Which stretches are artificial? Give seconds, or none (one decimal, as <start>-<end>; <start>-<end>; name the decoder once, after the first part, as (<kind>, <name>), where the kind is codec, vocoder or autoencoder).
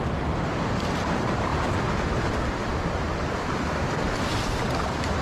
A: none